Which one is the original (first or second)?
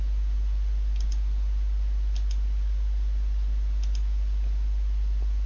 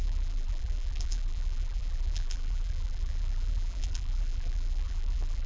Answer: first